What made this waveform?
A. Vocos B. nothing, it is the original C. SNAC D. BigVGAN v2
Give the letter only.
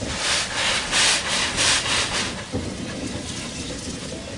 B